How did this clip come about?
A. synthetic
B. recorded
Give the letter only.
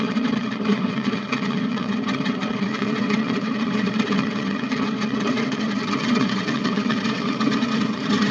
A